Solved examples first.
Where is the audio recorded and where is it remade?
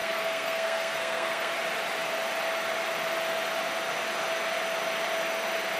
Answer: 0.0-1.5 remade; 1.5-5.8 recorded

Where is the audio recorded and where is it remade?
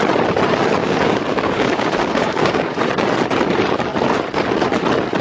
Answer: 0.0-0.8 recorded; 0.8-2.8 remade; 2.8-5.2 recorded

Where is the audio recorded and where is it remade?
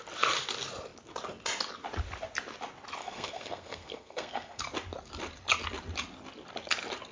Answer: 0.0-3.0 recorded; 3.0-4.6 remade; 4.6-7.1 recorded